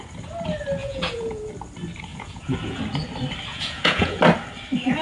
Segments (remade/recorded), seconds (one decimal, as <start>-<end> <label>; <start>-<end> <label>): 0.0-0.8 recorded; 0.8-1.5 remade; 1.5-2.1 recorded; 2.1-2.8 remade; 2.8-3.5 recorded; 3.5-4.2 remade; 4.2-5.0 recorded